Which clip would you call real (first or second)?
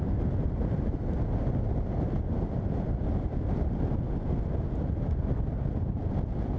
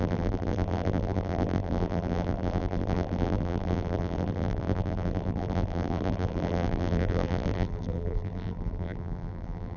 first